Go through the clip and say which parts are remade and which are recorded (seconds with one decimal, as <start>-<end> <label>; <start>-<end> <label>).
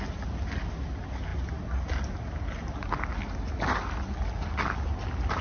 0.0-5.4 recorded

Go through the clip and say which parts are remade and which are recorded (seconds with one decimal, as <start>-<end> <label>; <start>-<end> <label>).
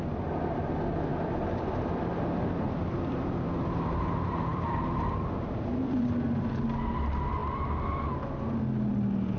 0.0-1.1 recorded; 1.1-2.1 remade; 2.1-4.5 recorded; 4.5-6.4 remade; 6.4-9.4 recorded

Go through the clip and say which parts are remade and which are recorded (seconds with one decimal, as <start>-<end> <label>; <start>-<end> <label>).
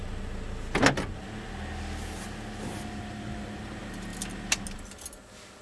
0.0-5.6 recorded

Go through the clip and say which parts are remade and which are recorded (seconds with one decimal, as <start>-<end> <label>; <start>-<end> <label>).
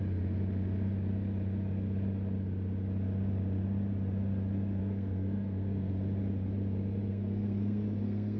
0.0-4.8 recorded; 4.8-5.9 remade; 5.9-7.1 recorded; 7.1-8.4 remade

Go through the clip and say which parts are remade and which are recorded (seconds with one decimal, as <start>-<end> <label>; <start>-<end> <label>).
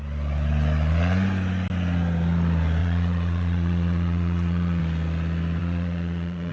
0.0-2.8 recorded; 2.8-4.8 remade; 4.8-5.6 recorded; 5.6-6.5 remade